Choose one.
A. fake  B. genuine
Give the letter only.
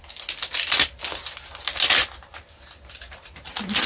B